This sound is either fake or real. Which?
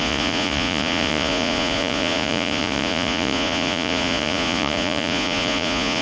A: fake